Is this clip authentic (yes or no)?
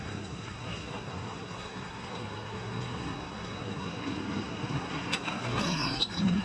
no